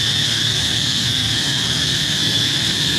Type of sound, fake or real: fake